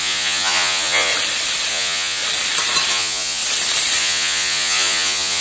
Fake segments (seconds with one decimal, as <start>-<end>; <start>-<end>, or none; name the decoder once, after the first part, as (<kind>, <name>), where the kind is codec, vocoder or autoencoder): 0.0-1.1 (vocoder, Vocos); 1.7-2.2; 2.9-3.4; 4.0-5.4

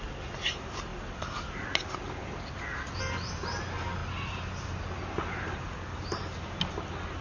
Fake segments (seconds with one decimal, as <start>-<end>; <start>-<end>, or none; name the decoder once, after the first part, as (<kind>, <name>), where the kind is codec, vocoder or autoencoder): none

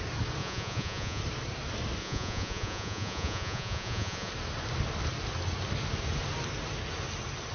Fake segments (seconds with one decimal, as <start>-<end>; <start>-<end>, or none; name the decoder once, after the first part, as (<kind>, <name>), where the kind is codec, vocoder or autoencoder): 0.4-1.2 (vocoder, Vocos); 2.0-4.3

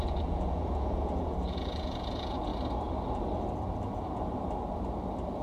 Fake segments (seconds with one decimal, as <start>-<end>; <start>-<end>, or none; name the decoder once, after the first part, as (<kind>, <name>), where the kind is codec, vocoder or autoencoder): 0.0-2.5 (vocoder, Vocos)

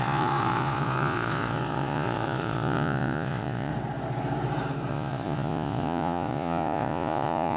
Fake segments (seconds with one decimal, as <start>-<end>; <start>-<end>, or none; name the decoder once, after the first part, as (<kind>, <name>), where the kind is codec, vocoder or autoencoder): 0.0-3.7 (vocoder, Vocos); 4.9-7.6

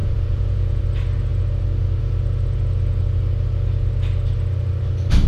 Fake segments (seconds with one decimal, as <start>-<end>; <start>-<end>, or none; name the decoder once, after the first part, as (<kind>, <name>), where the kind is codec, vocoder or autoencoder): 0.0-0.8 (vocoder, Vocos)

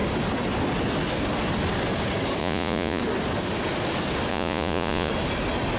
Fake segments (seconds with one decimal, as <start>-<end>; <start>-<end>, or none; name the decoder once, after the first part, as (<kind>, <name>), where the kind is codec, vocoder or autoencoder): 2.4-3.0 (vocoder, Vocos); 4.3-5.1

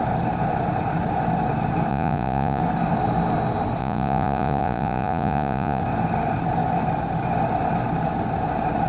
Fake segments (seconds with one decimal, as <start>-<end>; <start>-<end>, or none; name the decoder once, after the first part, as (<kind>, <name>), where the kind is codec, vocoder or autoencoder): 1.9-2.6 (vocoder, Vocos); 3.8-5.8